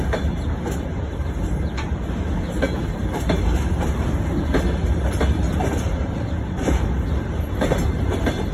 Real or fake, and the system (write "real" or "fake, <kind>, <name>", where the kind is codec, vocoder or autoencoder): fake, vocoder, BigVGAN v2